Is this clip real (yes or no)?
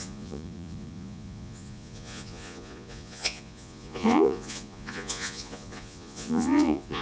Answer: no